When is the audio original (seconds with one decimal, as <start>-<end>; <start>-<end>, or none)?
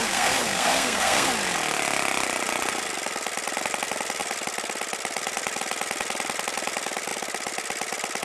1.3-8.2